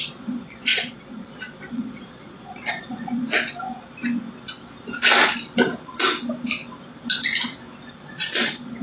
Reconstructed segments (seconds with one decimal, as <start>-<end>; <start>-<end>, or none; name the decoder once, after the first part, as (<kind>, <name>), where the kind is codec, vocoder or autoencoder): 0.0-3.3 (vocoder, Vocos); 7.9-8.8